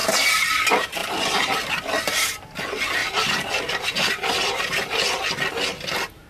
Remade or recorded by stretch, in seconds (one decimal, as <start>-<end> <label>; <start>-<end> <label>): 0.0-0.6 remade; 0.6-1.0 recorded; 1.0-1.7 remade; 1.7-3.0 recorded; 3.0-4.5 remade; 4.5-6.3 recorded